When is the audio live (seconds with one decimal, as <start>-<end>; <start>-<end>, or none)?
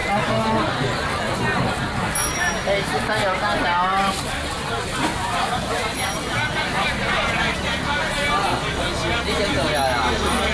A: 0.0-10.5